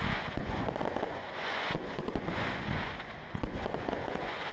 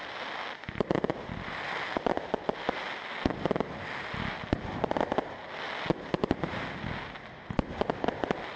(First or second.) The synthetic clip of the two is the first